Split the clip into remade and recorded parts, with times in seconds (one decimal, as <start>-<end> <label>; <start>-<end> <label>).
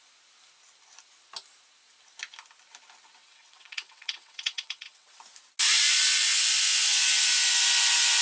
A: 0.0-3.2 recorded; 3.2-5.2 remade; 5.2-8.2 recorded